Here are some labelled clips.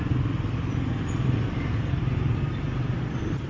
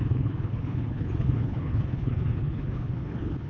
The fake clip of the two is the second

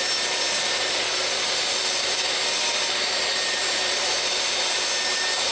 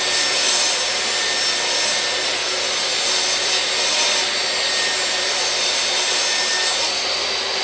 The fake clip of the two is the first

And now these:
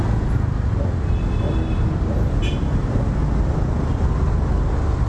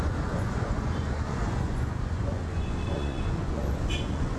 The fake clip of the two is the second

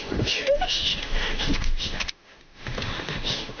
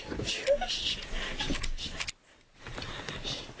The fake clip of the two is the first